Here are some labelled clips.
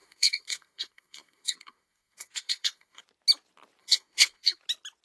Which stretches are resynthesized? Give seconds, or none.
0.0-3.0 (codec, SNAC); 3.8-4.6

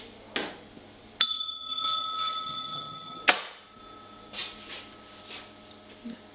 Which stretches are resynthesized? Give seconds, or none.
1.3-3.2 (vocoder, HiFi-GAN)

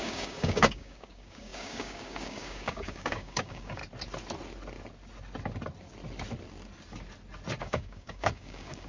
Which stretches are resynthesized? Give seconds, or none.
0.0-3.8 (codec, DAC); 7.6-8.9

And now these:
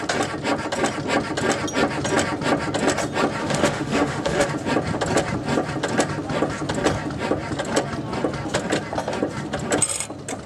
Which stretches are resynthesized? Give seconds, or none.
3.4-4.5 (autoencoder, DAC-VAE)

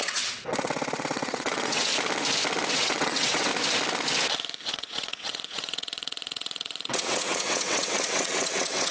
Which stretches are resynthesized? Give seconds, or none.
0.0-1.9 (vocoder, WaveNeXt); 2.7-3.5; 4.7-8.9

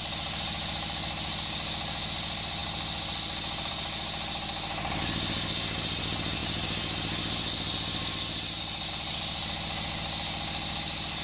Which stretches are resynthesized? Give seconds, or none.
none

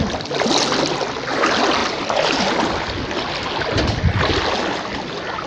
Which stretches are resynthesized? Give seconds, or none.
none